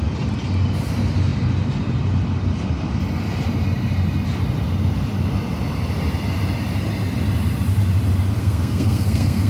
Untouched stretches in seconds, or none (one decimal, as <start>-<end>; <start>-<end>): 0.0-8.4